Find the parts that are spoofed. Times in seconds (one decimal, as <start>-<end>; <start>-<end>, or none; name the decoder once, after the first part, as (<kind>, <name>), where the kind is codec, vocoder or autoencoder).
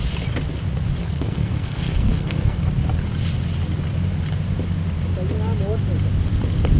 1.0-2.6 (codec, SNAC)